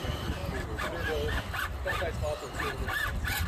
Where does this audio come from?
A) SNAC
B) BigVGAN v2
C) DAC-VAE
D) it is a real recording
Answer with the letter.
D